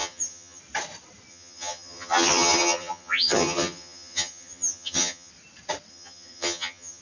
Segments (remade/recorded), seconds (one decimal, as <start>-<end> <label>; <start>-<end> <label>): 0.0-0.6 remade; 0.6-1.3 recorded; 1.3-5.3 remade; 5.3-5.9 recorded; 5.9-7.0 remade